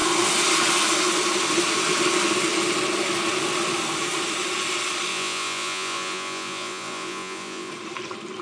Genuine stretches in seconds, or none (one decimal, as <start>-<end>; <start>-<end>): 0.0-5.1; 7.7-8.4